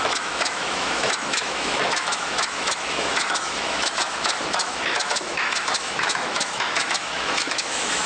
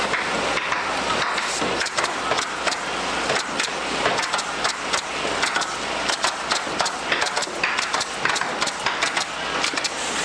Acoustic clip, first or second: second